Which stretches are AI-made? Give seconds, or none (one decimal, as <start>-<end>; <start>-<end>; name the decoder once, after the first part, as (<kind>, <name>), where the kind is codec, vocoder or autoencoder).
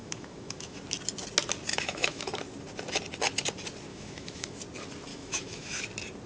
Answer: 0.0-0.8 (autoencoder, DAC-VAE); 1.7-2.2; 3.9-4.6; 5.1-5.8